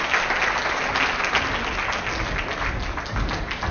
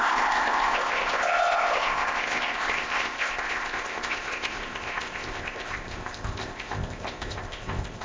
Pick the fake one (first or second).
second